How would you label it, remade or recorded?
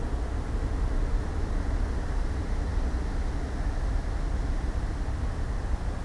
recorded